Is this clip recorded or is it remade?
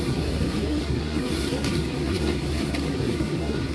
remade